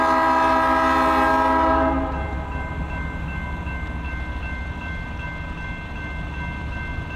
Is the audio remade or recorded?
recorded